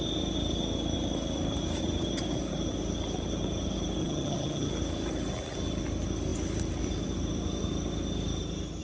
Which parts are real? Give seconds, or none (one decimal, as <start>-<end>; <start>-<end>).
0.0-4.0; 4.7-8.8